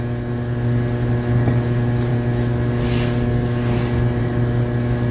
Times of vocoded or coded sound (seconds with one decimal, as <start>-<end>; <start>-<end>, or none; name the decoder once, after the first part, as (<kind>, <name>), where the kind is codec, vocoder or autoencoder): none